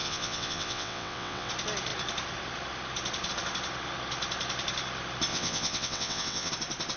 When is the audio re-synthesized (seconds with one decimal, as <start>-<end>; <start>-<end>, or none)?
0.0-1.5; 5.3-6.5

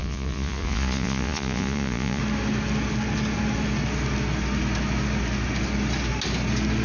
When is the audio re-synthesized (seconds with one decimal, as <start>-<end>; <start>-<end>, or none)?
0.0-2.2

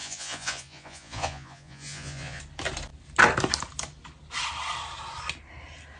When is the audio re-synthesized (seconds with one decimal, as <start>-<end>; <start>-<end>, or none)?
0.0-2.4

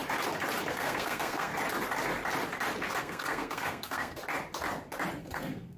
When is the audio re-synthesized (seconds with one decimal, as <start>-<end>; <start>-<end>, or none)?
0.7-1.5; 3.0-4.2; 5.2-5.8

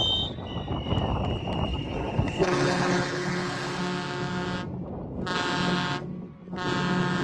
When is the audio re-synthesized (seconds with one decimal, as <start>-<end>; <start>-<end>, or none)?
1.7-3.8

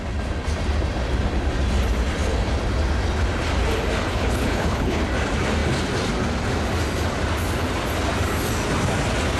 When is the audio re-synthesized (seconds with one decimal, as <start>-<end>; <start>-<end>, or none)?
4.1-5.0

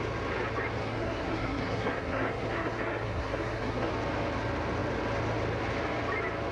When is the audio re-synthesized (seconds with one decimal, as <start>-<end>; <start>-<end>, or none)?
0.8-3.9

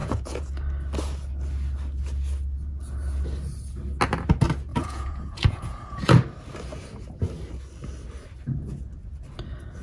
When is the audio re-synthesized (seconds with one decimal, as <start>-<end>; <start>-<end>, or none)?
0.0-0.5; 4.7-6.1